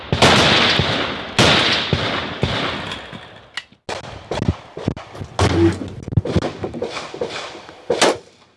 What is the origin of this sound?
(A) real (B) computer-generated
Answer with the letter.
A